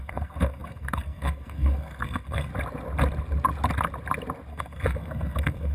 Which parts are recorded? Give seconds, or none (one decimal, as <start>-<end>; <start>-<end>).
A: 2.5-4.5